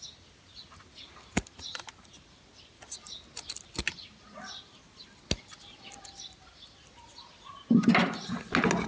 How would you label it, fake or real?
real